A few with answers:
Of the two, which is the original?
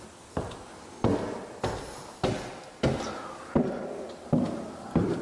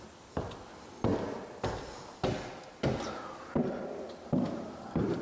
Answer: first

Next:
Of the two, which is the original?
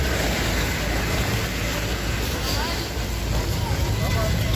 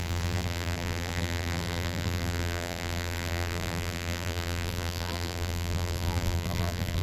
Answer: first